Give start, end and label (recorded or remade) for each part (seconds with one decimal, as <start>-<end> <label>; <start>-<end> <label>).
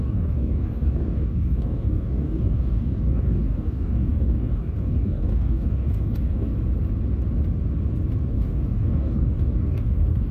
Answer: 0.0-6.5 remade; 6.5-8.3 recorded; 8.3-10.3 remade